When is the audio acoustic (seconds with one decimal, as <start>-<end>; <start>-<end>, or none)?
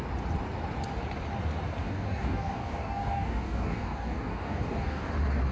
0.0-1.8; 5.1-5.5